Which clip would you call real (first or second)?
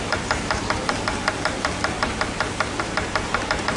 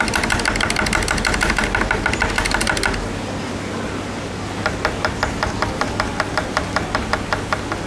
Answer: second